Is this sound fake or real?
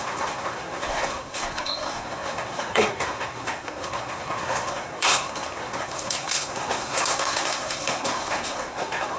fake